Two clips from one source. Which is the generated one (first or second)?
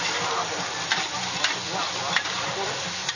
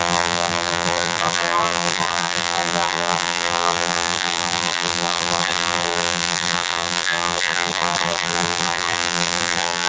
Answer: second